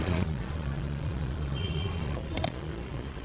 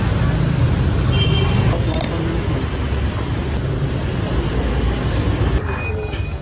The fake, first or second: first